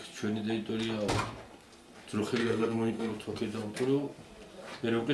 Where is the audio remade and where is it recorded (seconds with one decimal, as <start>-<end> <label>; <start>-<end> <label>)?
0.0-2.4 recorded; 2.4-3.1 remade; 3.1-5.1 recorded